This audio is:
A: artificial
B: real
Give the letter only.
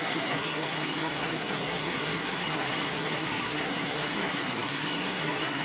A